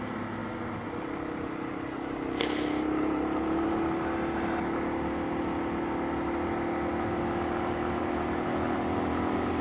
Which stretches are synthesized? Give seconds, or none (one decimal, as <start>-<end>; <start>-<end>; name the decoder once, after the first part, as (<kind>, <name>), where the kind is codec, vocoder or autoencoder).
none